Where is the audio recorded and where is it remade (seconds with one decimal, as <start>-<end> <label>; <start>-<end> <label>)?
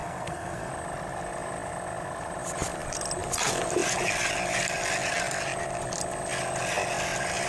0.0-0.7 remade; 0.7-7.5 recorded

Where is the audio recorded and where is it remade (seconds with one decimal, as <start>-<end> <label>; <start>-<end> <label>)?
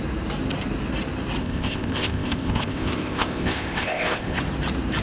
0.0-1.4 recorded; 1.4-4.4 remade; 4.4-5.0 recorded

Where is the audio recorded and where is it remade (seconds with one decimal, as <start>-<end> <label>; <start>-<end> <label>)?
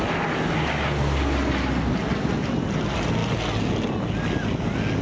0.0-5.0 recorded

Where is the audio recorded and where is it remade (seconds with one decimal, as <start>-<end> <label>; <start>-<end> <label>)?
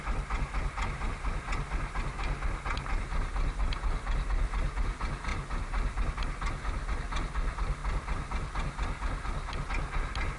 0.0-10.4 recorded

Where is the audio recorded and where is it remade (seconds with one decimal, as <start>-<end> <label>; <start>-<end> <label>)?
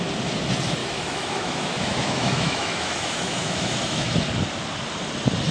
0.0-0.8 recorded; 0.8-4.1 remade; 4.1-5.5 recorded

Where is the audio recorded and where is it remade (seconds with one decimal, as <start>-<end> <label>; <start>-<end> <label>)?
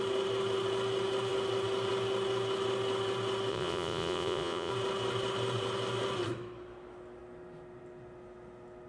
0.0-3.5 recorded; 3.5-4.7 remade; 4.7-8.9 recorded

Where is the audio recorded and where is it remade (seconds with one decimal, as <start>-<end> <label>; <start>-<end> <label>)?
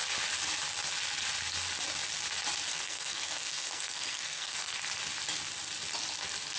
0.0-2.7 recorded; 2.7-4.8 remade; 4.8-6.6 recorded